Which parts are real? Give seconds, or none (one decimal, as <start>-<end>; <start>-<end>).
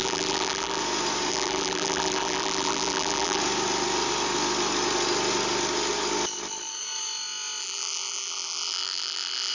0.8-1.3; 3.4-7.6